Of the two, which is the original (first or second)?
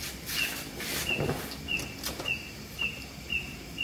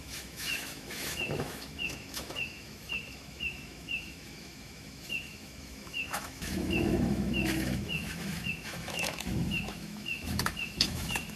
first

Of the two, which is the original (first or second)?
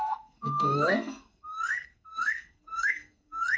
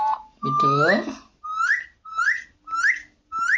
second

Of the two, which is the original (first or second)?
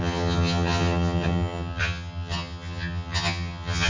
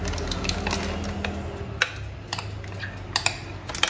second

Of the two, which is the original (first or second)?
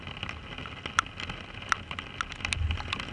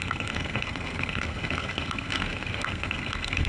first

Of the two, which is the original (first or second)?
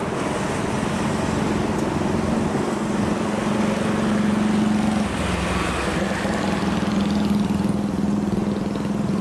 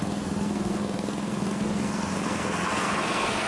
first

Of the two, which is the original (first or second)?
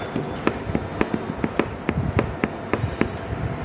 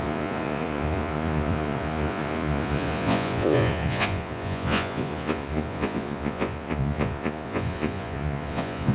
first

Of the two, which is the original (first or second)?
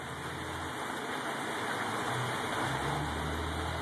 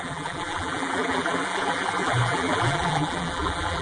first